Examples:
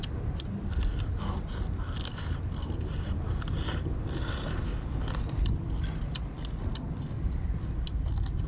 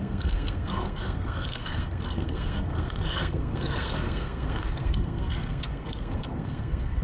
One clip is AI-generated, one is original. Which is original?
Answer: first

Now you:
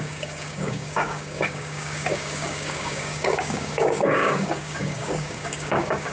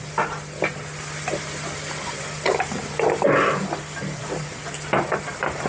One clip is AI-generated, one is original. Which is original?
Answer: second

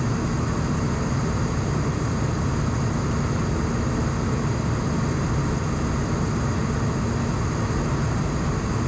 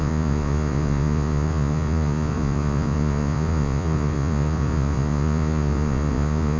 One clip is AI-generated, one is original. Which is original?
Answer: first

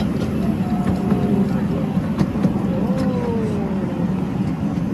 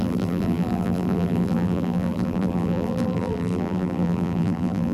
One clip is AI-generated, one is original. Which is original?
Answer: first